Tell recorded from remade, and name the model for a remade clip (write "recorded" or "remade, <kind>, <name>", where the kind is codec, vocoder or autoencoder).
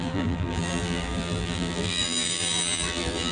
remade, vocoder, BigVGAN v2